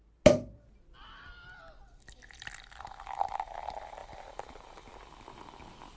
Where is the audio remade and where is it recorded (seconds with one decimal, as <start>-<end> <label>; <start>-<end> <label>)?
0.0-1.0 recorded; 1.0-1.6 remade; 1.6-4.0 recorded; 4.0-4.9 remade; 4.9-6.0 recorded